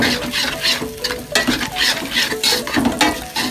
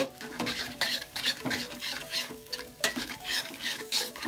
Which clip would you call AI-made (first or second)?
second